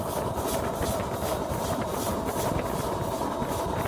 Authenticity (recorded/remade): recorded